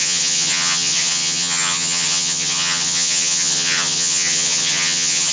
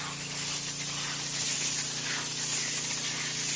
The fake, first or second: first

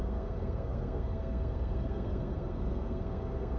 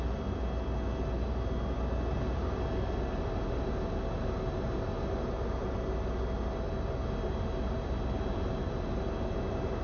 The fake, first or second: first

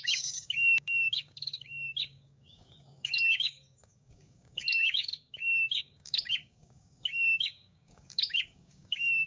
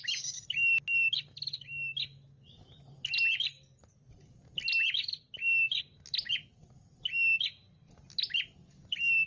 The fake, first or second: first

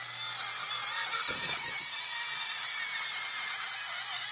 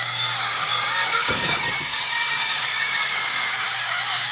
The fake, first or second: second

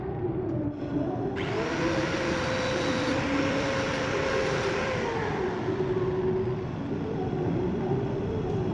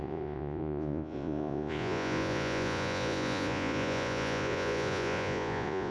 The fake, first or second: second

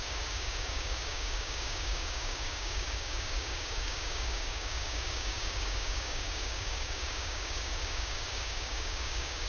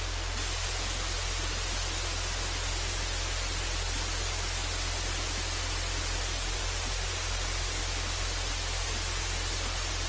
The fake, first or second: first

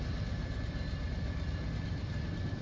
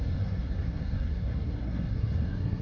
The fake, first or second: second